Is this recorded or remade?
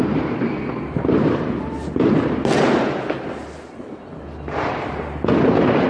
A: recorded